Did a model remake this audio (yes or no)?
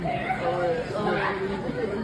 yes